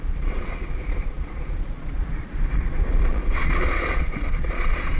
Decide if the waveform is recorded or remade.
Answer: remade